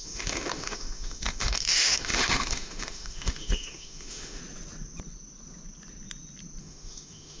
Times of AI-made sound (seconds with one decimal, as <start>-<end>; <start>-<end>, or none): 0.0-4.4; 6.6-7.4